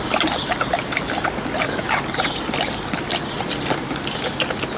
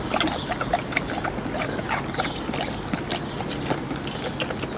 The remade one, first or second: first